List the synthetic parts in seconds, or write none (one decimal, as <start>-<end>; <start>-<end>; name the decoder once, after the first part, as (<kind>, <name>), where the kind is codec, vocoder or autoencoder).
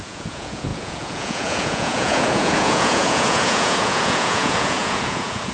0.0-5.5 (vocoder, Vocos)